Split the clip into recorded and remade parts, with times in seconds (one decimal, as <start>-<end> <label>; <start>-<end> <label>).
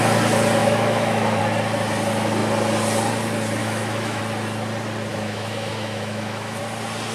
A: 0.0-0.6 recorded; 0.6-1.4 remade; 1.4-3.6 recorded; 3.6-4.2 remade; 4.2-5.1 recorded; 5.1-6.6 remade; 6.6-7.1 recorded